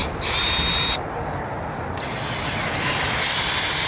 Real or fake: real